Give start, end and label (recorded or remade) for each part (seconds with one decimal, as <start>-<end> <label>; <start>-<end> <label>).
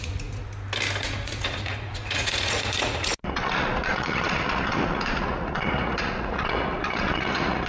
0.0-0.4 remade; 0.4-1.0 recorded; 1.0-7.7 remade